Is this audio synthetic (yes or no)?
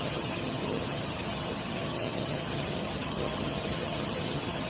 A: yes